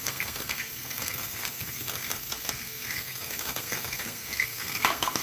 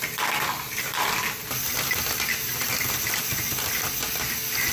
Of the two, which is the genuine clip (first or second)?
second